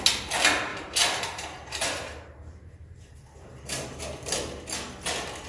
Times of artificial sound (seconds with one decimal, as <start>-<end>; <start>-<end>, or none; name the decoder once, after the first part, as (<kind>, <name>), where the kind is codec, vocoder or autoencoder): 0.7-4.0 (vocoder, BigVGAN v2)